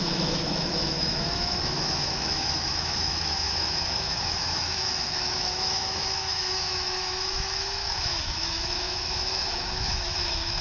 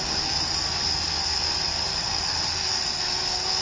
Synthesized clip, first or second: first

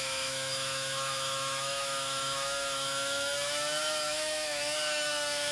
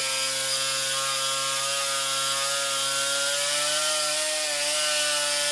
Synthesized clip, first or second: first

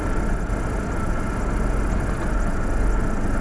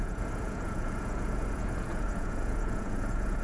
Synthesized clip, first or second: second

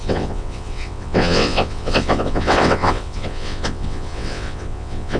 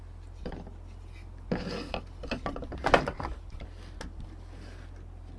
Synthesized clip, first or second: first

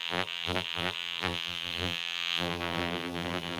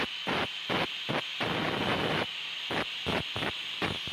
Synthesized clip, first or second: first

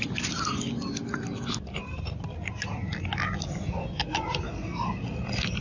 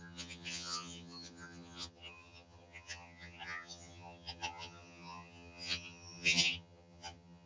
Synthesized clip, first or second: second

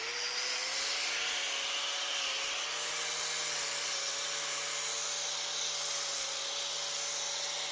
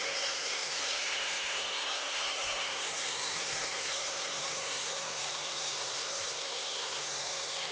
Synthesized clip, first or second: second